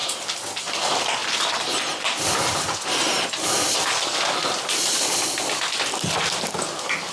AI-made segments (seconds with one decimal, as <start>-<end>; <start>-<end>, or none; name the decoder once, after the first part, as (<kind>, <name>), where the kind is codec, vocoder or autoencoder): none